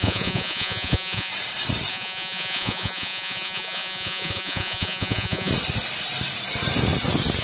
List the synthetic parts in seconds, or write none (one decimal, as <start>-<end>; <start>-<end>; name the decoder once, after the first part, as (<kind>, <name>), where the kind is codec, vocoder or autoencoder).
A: 0.0-1.3 (vocoder, Vocos); 1.9-5.5